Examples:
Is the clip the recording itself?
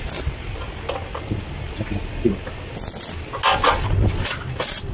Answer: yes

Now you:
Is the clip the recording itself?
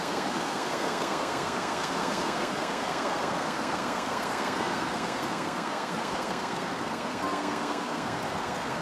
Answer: no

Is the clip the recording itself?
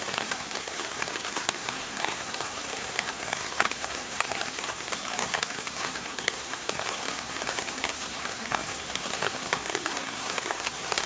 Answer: no